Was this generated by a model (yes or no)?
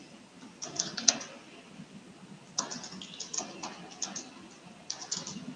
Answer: no